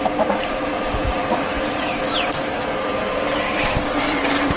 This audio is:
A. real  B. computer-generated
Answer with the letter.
B